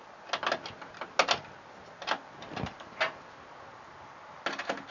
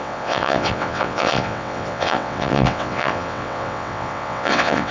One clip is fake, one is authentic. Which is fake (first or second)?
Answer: second